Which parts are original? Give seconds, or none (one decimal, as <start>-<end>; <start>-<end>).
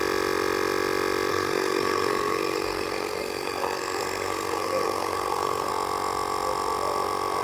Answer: 0.0-1.3; 5.7-7.4